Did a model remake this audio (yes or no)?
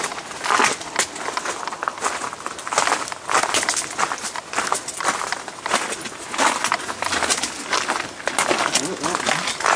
no